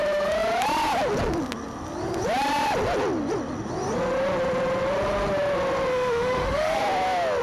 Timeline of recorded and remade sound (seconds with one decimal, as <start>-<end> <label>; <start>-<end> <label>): 0.0-5.9 recorded; 5.9-6.8 remade; 6.8-7.4 recorded